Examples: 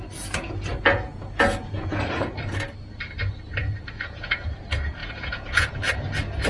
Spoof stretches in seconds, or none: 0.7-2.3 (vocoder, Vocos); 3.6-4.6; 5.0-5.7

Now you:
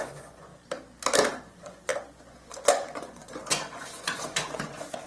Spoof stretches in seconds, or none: 0.0-0.5 (vocoder, Vocos); 1.3-5.1

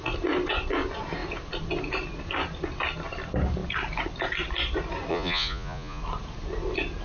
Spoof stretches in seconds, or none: 5.1-6.0 (vocoder, Vocos)

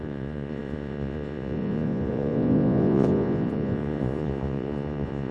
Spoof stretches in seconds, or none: 0.0-5.3 (vocoder, Vocos)

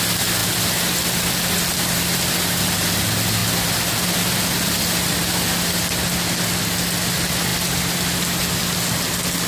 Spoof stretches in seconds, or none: none